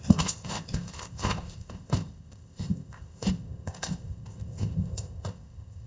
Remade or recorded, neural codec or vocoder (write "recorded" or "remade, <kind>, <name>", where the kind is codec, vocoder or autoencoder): remade, codec, ZipCodec